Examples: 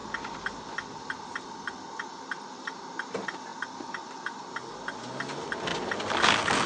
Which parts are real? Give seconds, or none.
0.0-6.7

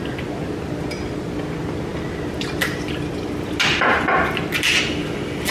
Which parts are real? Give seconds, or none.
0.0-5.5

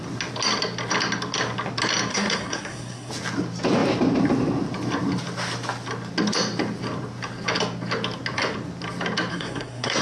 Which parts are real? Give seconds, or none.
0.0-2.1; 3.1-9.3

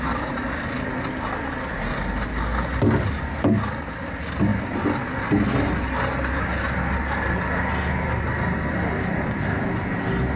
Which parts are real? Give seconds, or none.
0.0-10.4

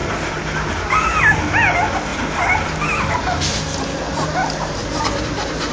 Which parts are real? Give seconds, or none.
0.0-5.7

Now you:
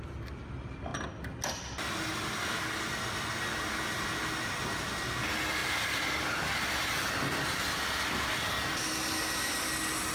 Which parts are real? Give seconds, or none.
0.0-10.1

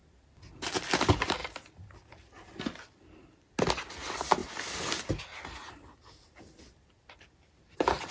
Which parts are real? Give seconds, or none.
0.0-8.1

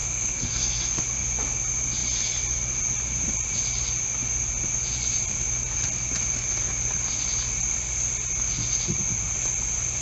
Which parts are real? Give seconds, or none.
0.8-10.0